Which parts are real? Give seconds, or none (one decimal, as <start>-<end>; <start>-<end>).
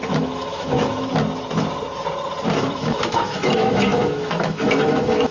1.1-2.6